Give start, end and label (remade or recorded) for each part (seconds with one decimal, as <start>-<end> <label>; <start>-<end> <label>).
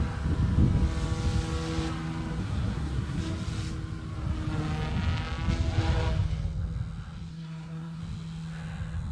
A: 0.0-2.4 recorded; 2.4-3.2 remade; 3.2-7.3 recorded; 7.3-8.0 remade; 8.0-9.1 recorded